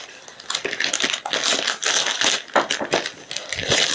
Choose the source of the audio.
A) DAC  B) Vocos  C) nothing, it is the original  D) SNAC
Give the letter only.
C